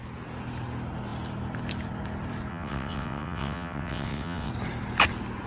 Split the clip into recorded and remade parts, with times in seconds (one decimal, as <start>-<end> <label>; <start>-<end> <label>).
0.0-2.5 recorded; 2.5-4.5 remade; 4.5-5.5 recorded